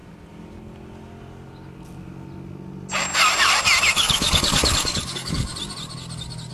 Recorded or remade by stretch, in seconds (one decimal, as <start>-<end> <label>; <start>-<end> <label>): 0.0-3.9 recorded; 3.9-5.5 remade; 5.5-6.5 recorded